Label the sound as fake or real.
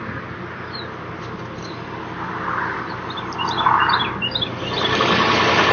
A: real